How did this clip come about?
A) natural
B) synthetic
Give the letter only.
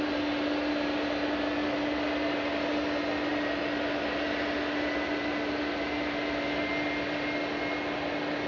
A